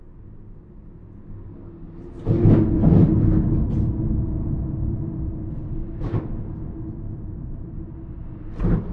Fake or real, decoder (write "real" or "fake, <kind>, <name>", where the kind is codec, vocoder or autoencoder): real